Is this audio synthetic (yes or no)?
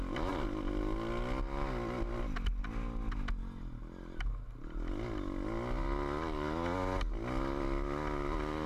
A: no